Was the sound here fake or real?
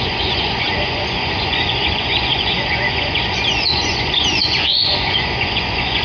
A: fake